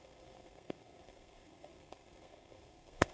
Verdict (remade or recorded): remade